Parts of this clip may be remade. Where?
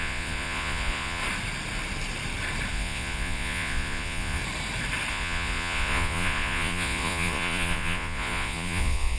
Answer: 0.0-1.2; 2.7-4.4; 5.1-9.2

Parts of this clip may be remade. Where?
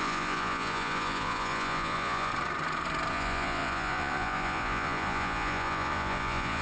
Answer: 0.0-2.3; 3.1-6.6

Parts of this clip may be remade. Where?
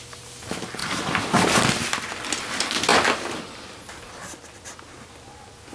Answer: none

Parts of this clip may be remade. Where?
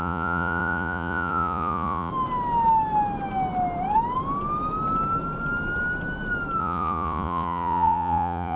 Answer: 0.0-2.1; 6.6-8.6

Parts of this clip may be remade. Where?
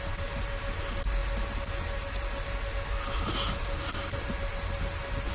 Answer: none